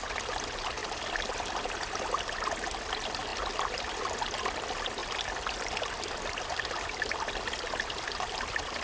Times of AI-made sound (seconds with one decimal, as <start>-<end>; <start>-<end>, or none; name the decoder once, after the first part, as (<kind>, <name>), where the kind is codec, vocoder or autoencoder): 5.0-6.0 (vocoder, BigVGAN v2)